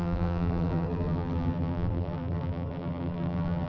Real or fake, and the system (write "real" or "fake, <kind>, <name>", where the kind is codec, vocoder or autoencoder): fake, vocoder, BigVGAN v2